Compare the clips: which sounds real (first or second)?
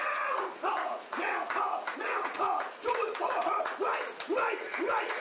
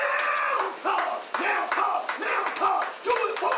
second